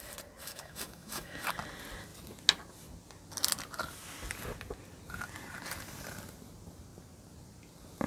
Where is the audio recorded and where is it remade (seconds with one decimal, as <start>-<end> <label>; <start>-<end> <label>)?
0.0-0.4 recorded; 0.4-1.4 remade; 1.4-8.1 recorded